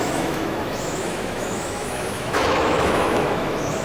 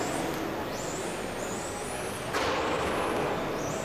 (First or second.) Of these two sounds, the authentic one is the second